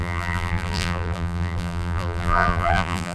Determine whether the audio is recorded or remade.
remade